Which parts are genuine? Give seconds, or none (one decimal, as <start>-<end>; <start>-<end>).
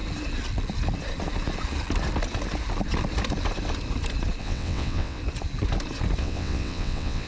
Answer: 0.0-4.4; 5.2-6.2